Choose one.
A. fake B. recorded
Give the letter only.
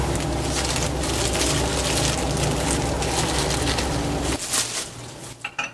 B